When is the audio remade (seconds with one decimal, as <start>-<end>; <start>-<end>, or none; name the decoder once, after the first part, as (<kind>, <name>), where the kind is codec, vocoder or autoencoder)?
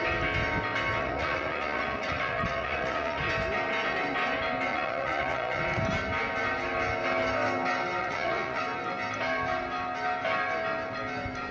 1.0-3.2 (vocoder, Vocos); 4.7-5.6; 8.0-8.6